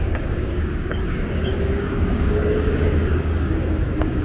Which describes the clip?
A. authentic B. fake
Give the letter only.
B